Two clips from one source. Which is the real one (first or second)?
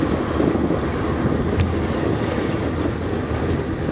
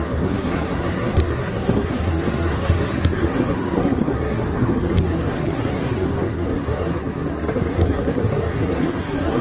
first